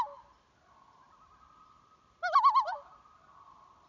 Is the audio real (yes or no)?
yes